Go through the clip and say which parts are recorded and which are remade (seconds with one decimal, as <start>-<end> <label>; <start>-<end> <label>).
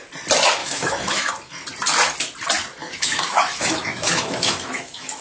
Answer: 0.0-0.6 recorded; 0.6-1.3 remade; 1.3-2.8 recorded; 2.8-5.2 remade